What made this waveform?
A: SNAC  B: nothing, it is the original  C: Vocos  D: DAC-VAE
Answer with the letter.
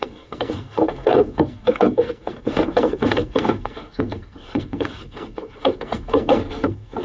A